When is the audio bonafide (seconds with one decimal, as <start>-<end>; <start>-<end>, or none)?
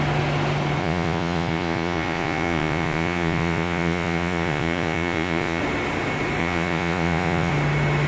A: 0.0-0.8; 5.6-6.4; 7.5-8.1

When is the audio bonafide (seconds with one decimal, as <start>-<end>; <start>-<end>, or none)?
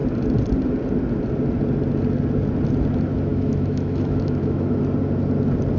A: 0.0-3.3; 4.8-5.8